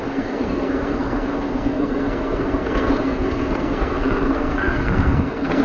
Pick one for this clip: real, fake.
fake